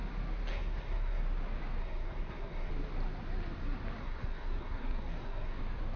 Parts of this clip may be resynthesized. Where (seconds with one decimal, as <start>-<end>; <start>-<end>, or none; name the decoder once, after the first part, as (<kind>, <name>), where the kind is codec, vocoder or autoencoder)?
0.5-1.2 (codec, SNAC); 1.8-2.7; 4.0-5.6